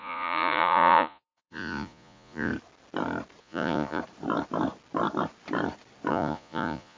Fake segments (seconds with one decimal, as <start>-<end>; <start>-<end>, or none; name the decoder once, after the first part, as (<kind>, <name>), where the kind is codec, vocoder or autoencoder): 0.0-2.5 (vocoder, Vocos); 3.4-4.0; 6.1-7.0